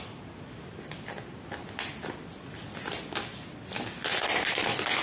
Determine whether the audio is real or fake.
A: real